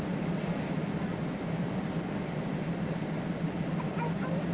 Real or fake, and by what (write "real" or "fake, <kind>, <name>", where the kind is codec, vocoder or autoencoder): real